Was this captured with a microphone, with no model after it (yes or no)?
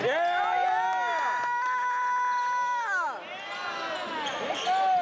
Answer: yes